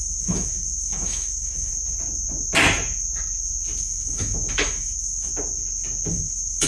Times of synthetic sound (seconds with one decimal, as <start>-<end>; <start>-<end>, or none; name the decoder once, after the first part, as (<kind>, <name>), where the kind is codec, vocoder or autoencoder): 0.0-1.7 (autoencoder, DAC-VAE); 3.8-5.3; 6.1-6.7